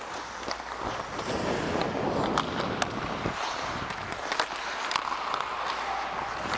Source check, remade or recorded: recorded